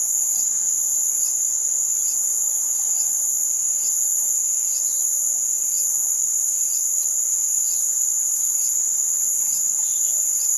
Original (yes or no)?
yes